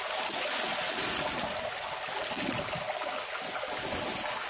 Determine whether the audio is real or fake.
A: real